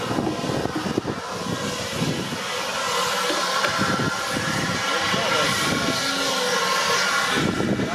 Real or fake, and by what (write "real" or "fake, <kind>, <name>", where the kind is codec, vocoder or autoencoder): real